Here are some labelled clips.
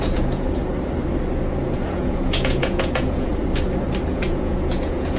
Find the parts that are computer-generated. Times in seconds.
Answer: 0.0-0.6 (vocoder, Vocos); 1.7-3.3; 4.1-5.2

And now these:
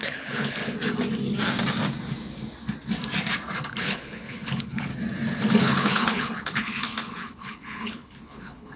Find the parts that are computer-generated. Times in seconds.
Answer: 0.0-0.6 (codec, HILCodec); 3.8-4.9; 5.6-8.8

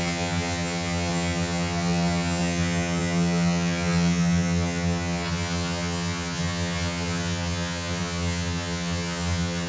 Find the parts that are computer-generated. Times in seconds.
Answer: 0.0-9.7 (vocoder, HiFi-GAN)

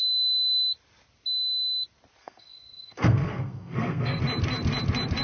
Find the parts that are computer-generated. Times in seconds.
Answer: 2.2-4.2 (codec, SNAC)

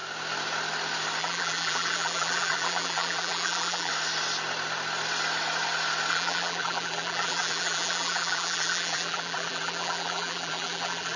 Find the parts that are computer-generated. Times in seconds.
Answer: 1.2-3.9 (vocoder, BigVGAN v2); 6.1-11.2